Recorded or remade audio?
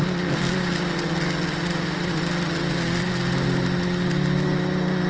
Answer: recorded